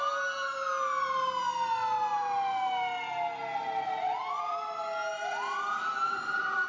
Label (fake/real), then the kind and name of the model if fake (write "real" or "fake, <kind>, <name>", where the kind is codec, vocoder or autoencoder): real